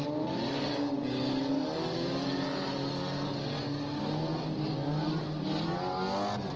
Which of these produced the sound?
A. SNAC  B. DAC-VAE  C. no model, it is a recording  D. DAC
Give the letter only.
C